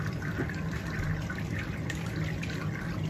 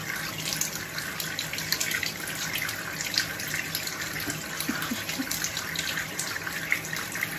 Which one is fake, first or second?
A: first